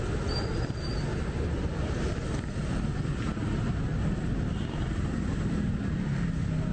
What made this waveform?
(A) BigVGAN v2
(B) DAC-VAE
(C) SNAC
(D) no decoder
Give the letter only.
D